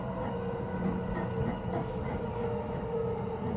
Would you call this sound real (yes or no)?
yes